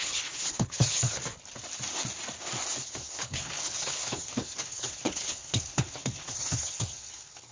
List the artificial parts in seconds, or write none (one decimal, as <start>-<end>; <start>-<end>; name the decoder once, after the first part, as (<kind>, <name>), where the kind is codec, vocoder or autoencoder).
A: 0.0-1.2 (codec, HILCodec); 2.8-7.5